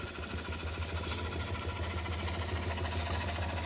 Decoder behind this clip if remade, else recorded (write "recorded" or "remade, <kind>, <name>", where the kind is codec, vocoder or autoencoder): recorded